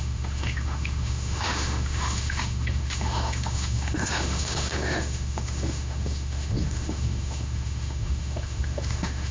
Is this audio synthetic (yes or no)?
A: yes